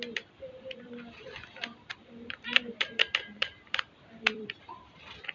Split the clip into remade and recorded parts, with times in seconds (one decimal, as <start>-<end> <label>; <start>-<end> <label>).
0.0-5.3 remade

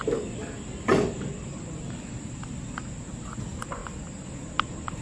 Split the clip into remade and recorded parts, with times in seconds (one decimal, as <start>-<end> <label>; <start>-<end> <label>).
0.0-0.9 recorded; 0.9-2.5 remade; 2.5-3.8 recorded; 3.8-4.5 remade; 4.5-5.0 recorded

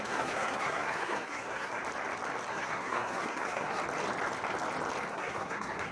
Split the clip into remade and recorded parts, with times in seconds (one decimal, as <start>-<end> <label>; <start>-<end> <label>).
0.0-1.8 remade; 1.8-2.5 recorded; 2.5-3.8 remade; 3.8-5.1 recorded; 5.1-5.9 remade

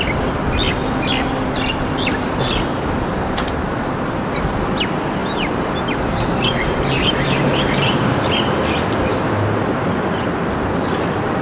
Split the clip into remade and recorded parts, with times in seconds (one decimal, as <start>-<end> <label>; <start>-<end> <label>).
0.0-5.2 recorded; 5.2-8.6 remade; 8.6-9.1 recorded; 9.1-10.0 remade; 10.0-11.4 recorded

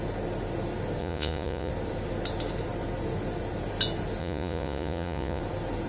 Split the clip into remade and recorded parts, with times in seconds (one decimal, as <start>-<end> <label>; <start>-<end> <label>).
0.0-1.0 recorded; 1.0-1.7 remade; 1.7-4.2 recorded; 4.2-5.4 remade; 5.4-5.9 recorded

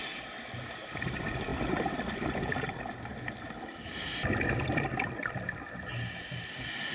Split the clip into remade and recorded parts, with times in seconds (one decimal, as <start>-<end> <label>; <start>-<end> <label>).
0.0-1.5 recorded; 1.5-2.1 remade; 2.1-3.1 recorded; 3.1-5.9 remade; 5.9-6.9 recorded

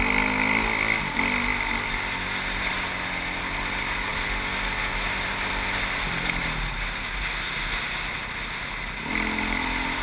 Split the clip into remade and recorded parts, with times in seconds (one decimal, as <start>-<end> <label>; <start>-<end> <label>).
0.0-10.0 recorded